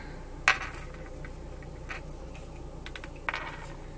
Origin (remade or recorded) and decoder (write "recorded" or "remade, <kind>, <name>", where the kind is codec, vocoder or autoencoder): recorded